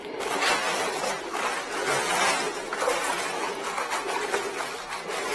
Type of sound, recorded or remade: recorded